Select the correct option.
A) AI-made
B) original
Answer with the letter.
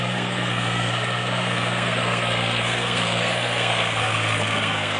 A